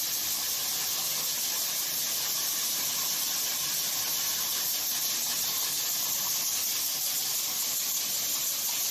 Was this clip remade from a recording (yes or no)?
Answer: no